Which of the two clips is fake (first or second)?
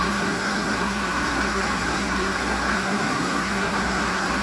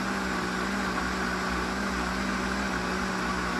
first